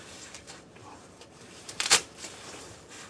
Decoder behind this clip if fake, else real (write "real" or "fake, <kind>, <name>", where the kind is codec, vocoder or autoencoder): fake, vocoder, BigVGAN v2